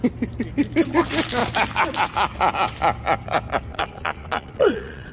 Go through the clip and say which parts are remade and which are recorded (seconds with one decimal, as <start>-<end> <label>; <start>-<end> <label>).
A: 0.0-3.7 recorded; 3.7-5.1 remade